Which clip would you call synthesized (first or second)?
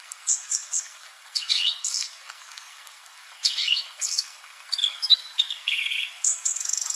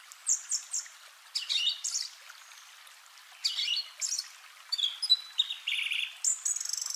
first